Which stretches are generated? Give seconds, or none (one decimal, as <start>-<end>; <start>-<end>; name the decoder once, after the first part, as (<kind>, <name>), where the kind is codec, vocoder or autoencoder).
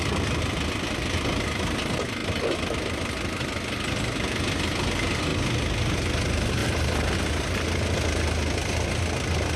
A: none